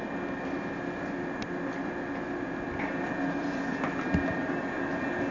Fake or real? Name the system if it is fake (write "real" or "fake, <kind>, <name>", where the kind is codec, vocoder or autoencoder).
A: real